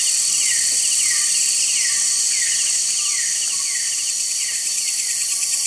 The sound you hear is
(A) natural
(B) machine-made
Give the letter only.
A